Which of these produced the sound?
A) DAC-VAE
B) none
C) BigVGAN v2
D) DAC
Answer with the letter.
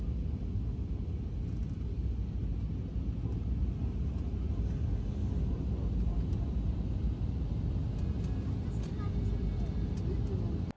B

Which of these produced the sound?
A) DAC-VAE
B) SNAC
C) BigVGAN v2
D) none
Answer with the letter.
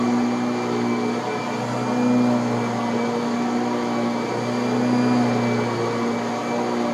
D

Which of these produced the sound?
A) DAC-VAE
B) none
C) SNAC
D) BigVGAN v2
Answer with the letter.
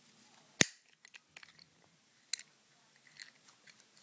B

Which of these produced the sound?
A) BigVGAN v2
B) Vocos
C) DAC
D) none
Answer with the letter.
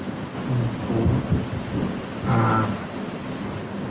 D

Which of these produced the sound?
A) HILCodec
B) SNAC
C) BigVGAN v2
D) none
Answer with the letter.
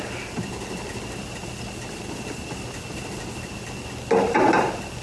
D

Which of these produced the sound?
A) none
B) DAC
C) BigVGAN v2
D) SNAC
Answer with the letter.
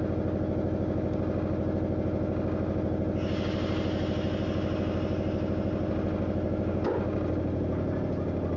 A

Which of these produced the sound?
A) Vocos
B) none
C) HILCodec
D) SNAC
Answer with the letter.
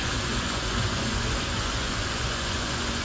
A